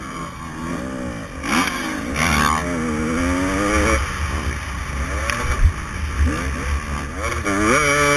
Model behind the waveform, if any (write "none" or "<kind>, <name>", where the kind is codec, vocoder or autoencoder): none